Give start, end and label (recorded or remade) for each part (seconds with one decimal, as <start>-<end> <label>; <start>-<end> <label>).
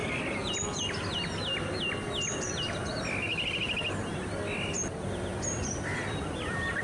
0.0-0.5 remade; 0.5-3.3 recorded; 3.3-4.0 remade; 4.0-5.3 recorded; 5.3-6.8 remade